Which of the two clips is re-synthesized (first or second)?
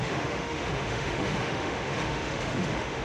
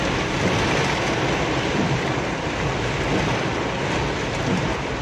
first